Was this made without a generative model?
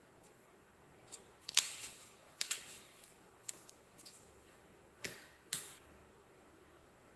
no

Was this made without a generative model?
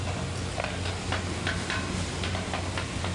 yes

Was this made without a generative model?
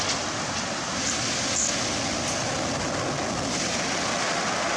yes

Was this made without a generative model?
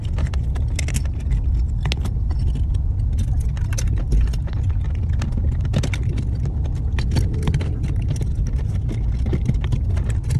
yes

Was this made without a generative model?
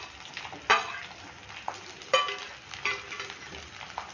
yes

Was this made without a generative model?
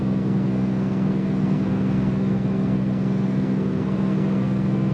no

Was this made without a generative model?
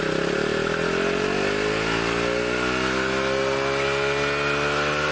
yes